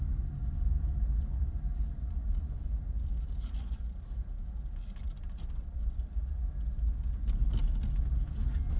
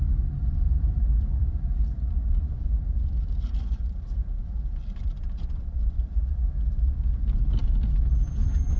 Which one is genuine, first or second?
first